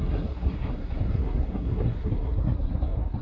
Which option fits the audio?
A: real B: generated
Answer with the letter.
B